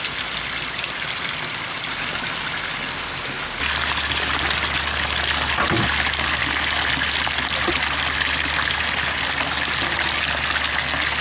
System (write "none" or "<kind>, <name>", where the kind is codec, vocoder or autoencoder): none